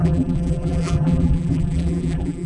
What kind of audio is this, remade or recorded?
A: remade